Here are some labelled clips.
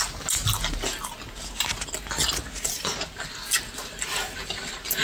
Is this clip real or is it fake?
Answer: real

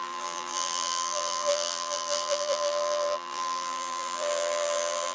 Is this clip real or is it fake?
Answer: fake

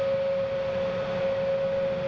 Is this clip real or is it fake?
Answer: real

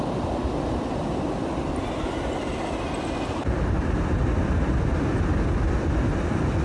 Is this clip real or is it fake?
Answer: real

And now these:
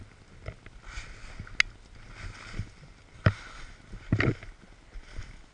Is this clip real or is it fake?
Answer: real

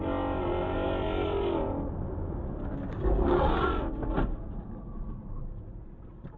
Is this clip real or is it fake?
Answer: real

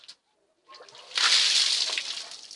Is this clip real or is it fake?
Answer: real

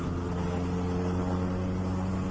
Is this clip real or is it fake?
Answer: real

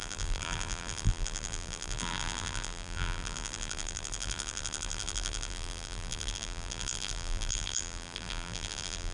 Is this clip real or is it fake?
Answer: fake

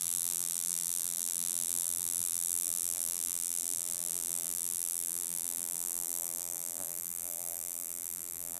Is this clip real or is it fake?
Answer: fake